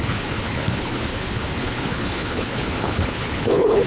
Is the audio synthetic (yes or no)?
yes